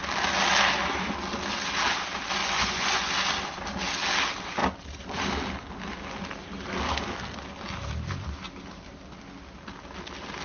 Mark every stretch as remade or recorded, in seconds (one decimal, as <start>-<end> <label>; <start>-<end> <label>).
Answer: 0.0-2.4 recorded; 2.4-3.1 remade; 3.1-10.4 recorded

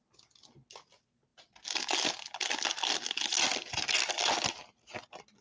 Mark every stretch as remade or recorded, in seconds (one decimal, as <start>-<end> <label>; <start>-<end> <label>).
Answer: 0.0-5.4 recorded

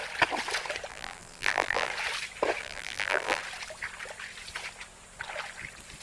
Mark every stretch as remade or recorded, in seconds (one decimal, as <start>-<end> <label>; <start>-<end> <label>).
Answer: 0.0-0.9 recorded; 0.9-1.9 remade; 1.9-2.6 recorded; 2.6-3.4 remade; 3.4-6.0 recorded

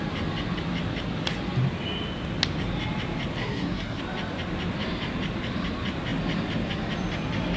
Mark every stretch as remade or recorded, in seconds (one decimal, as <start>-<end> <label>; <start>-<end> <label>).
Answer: 0.0-3.4 recorded; 3.4-4.0 remade; 4.0-7.6 recorded

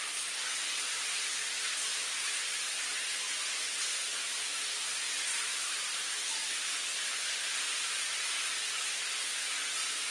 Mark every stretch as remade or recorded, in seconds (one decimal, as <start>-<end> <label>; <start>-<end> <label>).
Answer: 0.0-10.1 recorded

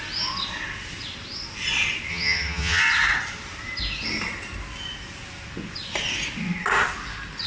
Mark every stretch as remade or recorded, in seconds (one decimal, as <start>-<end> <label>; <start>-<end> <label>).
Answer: 0.0-2.1 recorded; 2.1-2.8 remade; 2.8-7.5 recorded

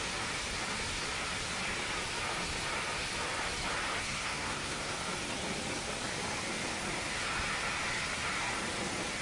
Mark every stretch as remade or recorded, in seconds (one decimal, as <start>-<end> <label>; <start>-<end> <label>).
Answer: 0.0-4.0 recorded; 4.0-4.9 remade; 4.9-9.2 recorded

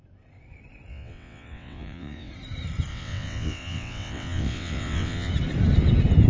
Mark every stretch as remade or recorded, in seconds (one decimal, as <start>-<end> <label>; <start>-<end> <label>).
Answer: 0.0-0.9 recorded; 0.9-2.3 remade; 2.3-2.9 recorded; 2.9-5.3 remade; 5.3-6.3 recorded